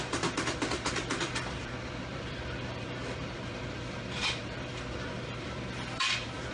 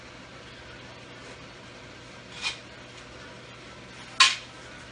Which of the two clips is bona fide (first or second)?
second